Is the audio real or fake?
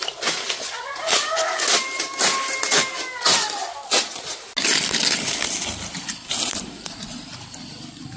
real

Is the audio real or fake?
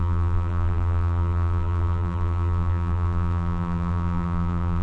fake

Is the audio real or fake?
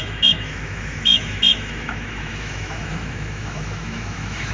fake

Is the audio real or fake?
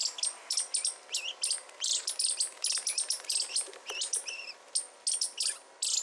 real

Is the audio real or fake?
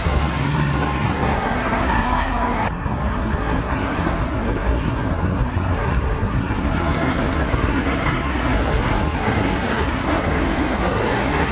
fake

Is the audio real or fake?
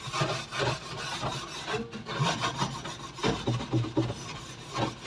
real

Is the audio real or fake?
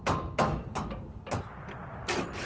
real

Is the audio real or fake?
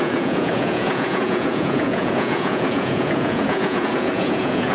fake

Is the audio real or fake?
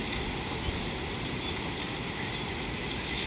real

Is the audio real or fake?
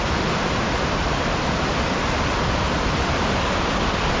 real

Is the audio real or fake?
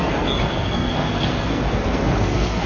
fake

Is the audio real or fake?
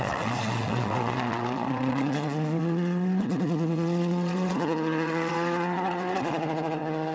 fake